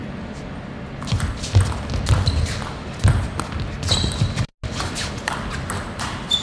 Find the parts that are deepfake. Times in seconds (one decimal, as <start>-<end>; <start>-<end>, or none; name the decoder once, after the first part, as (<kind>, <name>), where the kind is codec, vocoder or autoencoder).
none